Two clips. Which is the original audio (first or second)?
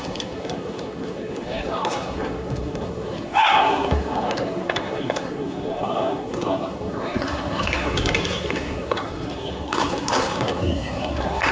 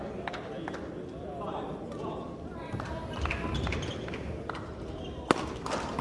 second